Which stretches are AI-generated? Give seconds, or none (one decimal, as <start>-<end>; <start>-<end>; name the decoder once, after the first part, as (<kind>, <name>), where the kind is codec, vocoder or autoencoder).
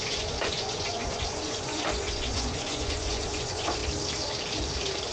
0.0-3.8 (vocoder, Vocos)